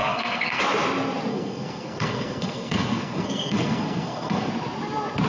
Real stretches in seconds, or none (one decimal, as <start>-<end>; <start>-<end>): 0.6-1.3; 4.5-5.3